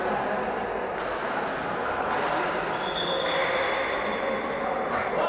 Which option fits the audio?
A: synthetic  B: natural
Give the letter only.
B